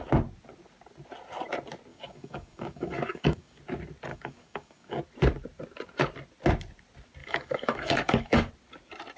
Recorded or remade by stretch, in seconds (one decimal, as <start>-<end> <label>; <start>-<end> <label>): 0.0-1.9 recorded; 1.9-3.6 remade; 3.6-4.1 recorded; 4.1-5.0 remade; 5.0-7.2 recorded; 7.2-8.5 remade; 8.5-9.2 recorded